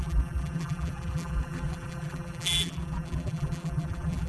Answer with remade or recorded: remade